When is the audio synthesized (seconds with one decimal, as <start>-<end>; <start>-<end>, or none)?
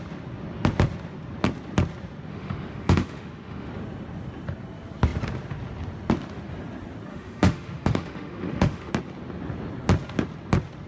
2.3-3.7; 7.1-8.9